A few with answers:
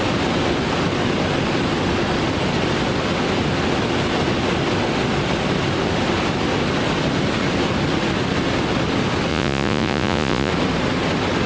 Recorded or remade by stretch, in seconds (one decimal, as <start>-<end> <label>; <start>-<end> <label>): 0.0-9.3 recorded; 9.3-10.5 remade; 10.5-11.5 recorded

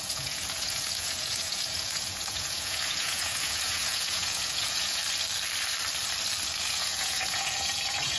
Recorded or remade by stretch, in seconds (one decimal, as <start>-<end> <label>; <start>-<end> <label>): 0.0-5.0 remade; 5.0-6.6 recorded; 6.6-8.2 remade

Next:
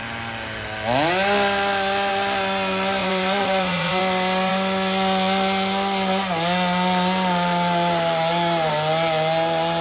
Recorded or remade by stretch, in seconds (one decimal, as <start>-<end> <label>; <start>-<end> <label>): 0.0-3.0 recorded; 3.0-4.0 remade; 4.0-9.8 recorded